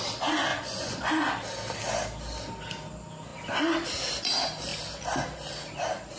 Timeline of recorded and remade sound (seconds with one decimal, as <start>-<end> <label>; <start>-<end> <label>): 0.0-0.5 recorded; 0.5-1.2 remade; 1.2-6.2 recorded